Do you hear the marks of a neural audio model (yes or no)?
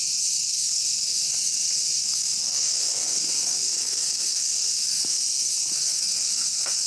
yes